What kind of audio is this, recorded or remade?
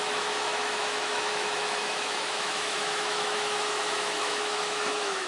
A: remade